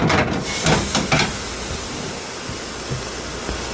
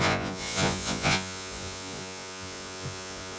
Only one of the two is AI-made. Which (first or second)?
second